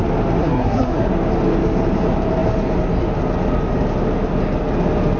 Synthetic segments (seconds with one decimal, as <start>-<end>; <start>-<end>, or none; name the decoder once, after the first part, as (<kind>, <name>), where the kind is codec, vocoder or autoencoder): 0.4-1.1 (codec, SNAC)